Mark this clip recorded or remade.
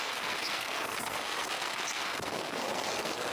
remade